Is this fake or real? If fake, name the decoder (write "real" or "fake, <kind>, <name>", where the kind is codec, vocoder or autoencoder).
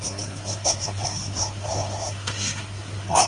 fake, codec, SNAC